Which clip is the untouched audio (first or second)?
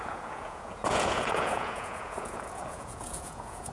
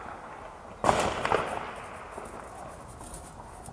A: second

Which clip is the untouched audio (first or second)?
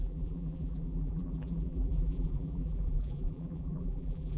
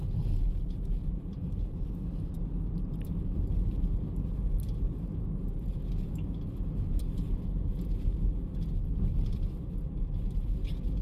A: second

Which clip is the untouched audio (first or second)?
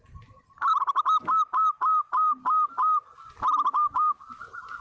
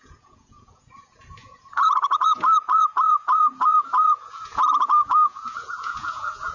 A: first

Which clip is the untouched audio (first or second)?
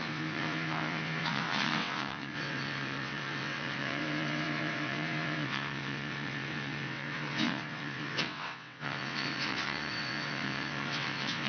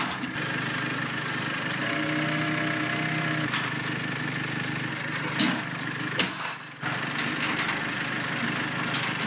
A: second